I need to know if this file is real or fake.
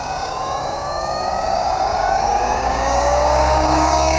fake